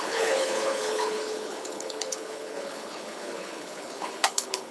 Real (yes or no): no